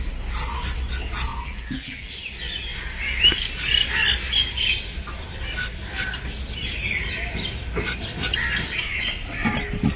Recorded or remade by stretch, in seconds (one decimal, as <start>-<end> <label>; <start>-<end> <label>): 0.0-1.3 recorded; 1.3-2.1 remade; 2.1-10.0 recorded